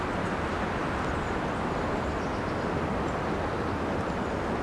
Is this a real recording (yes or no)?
yes